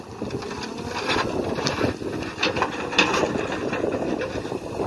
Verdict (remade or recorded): recorded